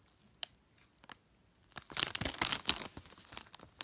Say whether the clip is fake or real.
real